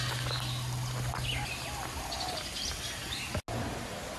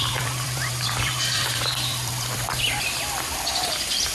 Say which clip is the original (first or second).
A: first